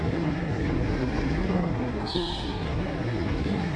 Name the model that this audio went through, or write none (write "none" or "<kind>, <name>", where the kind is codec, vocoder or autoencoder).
codec, SNAC